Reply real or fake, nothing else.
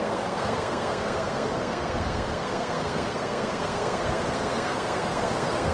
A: fake